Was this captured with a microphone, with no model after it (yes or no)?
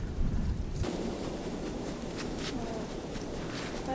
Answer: no